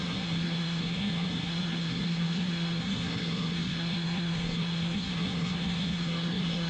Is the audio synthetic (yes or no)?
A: yes